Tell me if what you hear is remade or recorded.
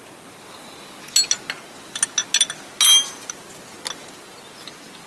recorded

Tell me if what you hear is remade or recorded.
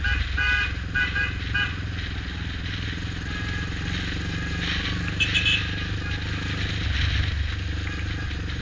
recorded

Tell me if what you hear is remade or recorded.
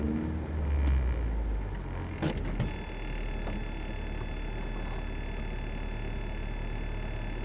recorded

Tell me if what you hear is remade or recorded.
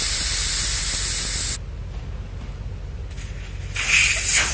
recorded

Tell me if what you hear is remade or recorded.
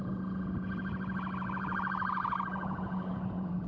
remade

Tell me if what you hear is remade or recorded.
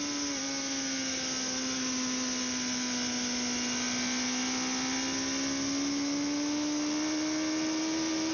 recorded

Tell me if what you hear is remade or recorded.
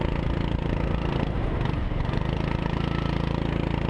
recorded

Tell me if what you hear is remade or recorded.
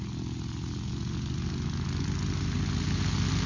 recorded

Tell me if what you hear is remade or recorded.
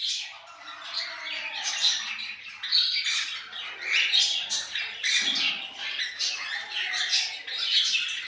recorded